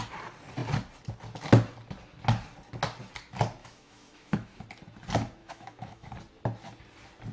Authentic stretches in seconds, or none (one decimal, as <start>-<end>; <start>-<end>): 0.0-3.6; 4.6-5.4; 6.1-7.3